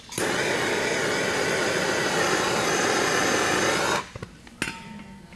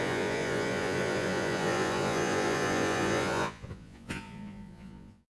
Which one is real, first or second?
first